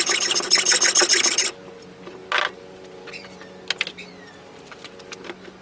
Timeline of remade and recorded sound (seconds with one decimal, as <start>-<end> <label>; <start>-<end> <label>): 0.0-0.7 recorded; 0.7-1.4 remade; 1.4-5.6 recorded